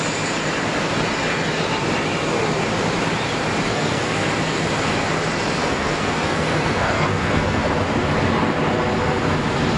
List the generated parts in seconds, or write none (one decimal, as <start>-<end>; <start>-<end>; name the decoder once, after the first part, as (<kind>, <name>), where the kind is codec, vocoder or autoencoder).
3.7-4.3 (codec, SNAC); 5.6-7.6